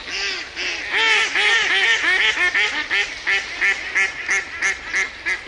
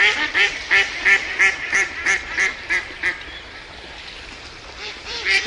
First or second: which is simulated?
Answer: second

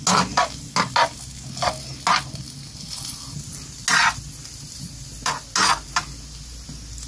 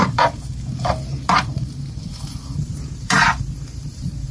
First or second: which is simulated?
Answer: second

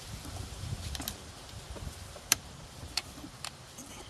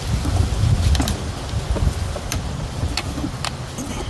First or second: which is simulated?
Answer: first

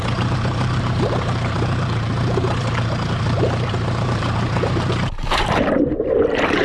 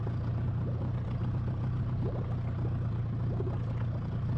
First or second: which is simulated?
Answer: first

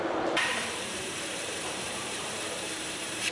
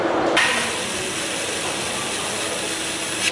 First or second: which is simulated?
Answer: first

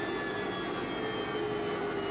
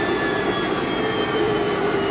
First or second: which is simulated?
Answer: second